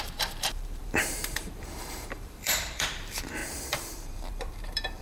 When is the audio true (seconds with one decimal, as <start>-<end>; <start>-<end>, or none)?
none